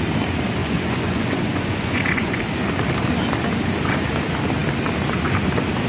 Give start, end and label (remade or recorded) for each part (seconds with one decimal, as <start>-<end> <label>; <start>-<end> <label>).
0.0-0.6 recorded; 0.6-2.4 remade; 2.4-5.9 recorded